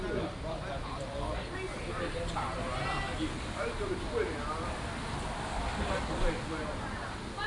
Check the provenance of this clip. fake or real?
real